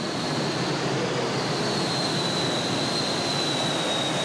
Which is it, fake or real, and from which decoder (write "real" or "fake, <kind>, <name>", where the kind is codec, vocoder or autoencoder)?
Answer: fake, vocoder, BigVGAN v2